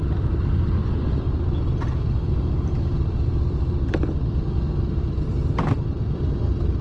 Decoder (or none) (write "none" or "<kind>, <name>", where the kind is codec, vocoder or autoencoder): none